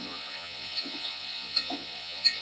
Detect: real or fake fake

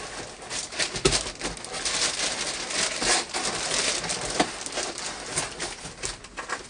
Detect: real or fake real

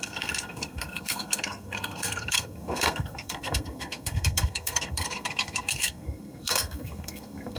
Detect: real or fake fake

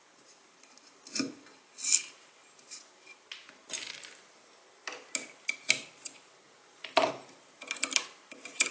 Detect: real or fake real